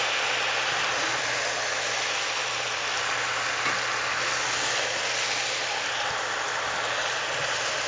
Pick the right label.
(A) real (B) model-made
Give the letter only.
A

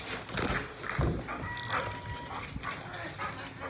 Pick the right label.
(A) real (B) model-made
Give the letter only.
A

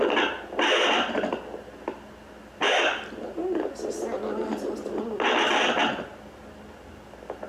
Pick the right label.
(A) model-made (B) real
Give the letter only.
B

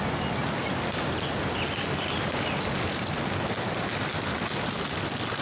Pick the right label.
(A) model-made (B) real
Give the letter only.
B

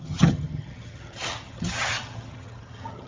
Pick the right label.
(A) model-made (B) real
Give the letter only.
A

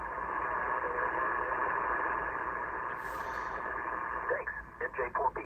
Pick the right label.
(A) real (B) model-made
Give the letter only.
A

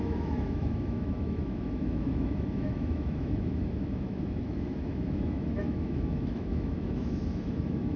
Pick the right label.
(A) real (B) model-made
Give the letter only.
B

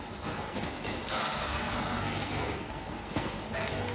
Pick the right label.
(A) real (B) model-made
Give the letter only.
B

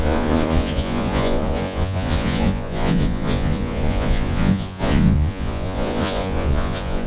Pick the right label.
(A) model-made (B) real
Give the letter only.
A